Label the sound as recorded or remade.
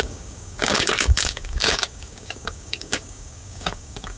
remade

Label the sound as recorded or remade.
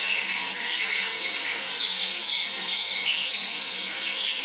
remade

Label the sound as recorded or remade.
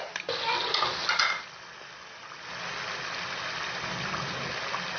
recorded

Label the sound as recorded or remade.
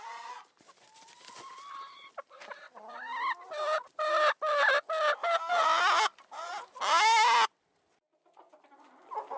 recorded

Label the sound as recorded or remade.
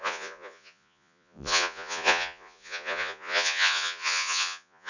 remade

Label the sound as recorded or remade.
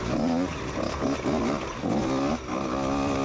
recorded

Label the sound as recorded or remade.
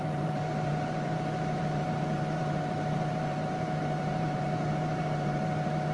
remade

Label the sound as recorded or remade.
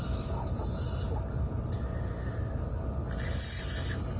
recorded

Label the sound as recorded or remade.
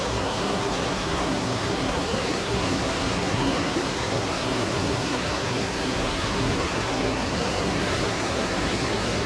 remade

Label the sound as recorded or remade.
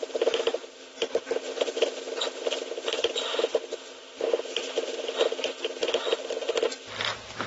recorded